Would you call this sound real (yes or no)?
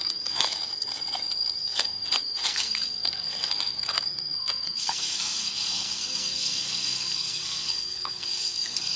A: no